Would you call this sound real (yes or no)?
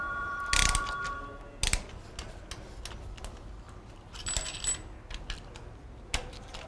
yes